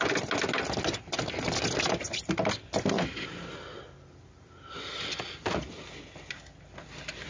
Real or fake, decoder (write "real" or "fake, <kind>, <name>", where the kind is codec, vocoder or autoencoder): real